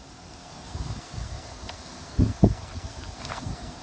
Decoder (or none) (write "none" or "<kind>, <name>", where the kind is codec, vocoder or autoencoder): codec, SNAC